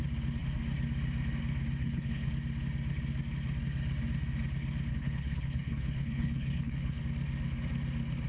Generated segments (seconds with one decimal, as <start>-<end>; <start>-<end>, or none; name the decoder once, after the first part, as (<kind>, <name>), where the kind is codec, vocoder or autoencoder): 1.8-2.3 (codec, HILCodec); 4.9-7.0